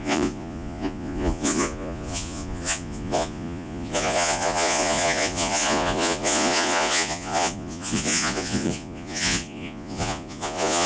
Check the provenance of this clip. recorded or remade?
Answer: remade